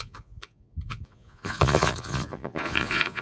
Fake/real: fake